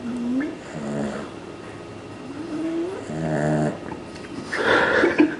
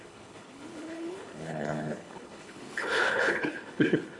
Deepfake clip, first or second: second